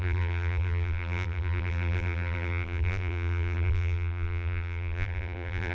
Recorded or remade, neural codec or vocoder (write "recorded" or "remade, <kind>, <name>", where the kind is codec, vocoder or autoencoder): remade, vocoder, BigVGAN v2